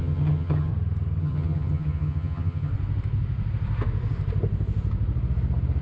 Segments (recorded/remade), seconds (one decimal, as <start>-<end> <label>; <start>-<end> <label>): 0.0-0.7 remade; 0.7-1.2 recorded; 1.2-2.7 remade; 2.7-5.8 recorded